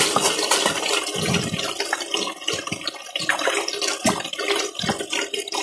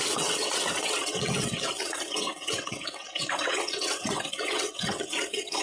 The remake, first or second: second